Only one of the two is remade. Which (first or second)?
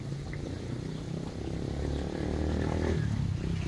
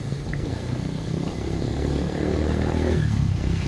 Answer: second